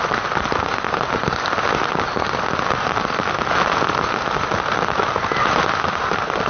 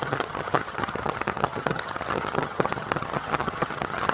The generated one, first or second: second